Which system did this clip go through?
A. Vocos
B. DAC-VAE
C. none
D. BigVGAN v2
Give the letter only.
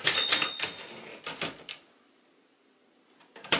C